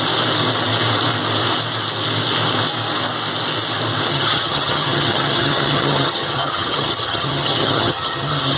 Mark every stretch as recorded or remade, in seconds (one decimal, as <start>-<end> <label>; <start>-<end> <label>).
0.0-4.1 recorded; 4.1-8.6 remade